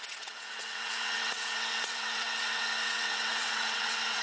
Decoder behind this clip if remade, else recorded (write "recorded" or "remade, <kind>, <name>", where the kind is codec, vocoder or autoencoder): remade, vocoder, WaveNeXt